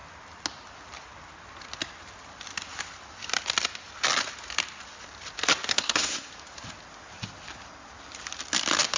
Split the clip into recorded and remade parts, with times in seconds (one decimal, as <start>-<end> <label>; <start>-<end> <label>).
0.0-5.7 recorded; 5.7-6.3 remade; 6.3-9.0 recorded